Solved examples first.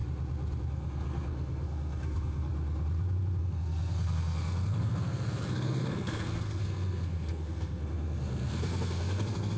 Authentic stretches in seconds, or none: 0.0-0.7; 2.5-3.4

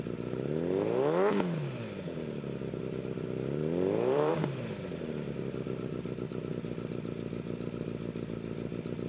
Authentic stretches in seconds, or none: 0.0-3.6; 4.3-9.1

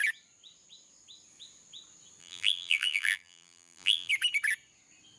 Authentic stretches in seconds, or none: 0.0-2.2; 4.1-5.2